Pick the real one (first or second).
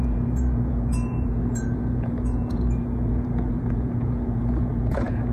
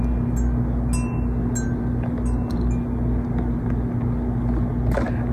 second